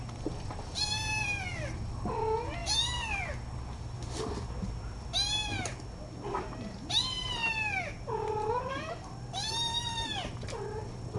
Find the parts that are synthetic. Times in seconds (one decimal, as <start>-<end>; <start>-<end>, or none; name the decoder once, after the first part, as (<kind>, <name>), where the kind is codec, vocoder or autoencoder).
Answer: none